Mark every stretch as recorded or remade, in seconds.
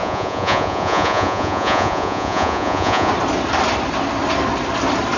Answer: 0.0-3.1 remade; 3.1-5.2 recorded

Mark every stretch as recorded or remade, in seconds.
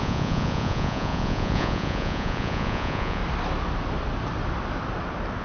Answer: 0.0-3.2 remade; 3.2-5.4 recorded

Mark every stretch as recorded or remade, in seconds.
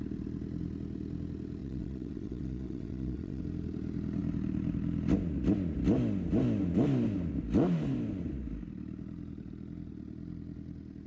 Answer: 0.0-1.6 recorded; 1.6-3.4 remade; 3.4-11.1 recorded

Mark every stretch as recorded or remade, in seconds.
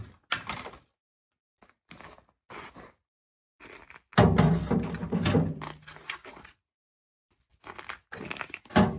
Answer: 0.0-9.0 recorded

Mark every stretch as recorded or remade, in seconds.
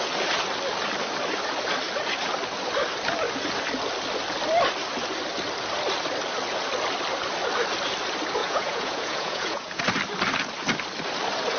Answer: 0.0-8.4 recorded; 8.4-9.8 remade; 9.8-11.6 recorded